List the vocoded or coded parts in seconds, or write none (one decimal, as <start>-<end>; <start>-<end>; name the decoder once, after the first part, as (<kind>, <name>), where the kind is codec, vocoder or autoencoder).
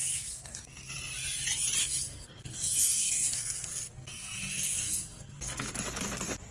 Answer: 0.0-0.9 (codec, SNAC); 1.8-5.7